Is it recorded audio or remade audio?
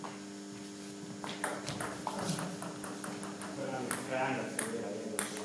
recorded